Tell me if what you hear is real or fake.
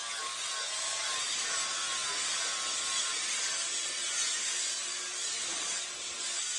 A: real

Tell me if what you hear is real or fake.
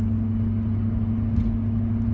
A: real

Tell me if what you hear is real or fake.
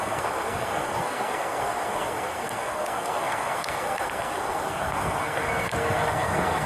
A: fake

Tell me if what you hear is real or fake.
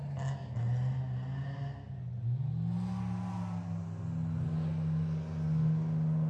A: real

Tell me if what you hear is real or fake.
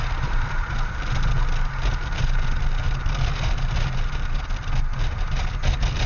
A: real